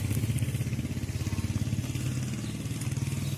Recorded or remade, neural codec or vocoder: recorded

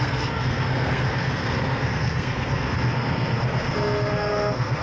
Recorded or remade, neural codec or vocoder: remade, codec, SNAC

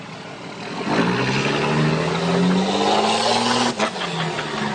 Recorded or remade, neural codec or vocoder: recorded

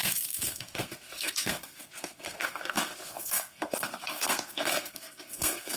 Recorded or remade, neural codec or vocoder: remade, codec, SNAC